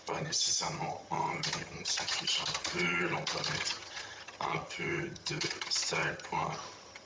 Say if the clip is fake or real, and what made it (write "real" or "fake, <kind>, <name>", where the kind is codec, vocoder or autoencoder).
fake, vocoder, HiFi-GAN